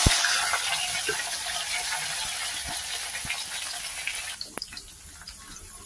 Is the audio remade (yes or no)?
no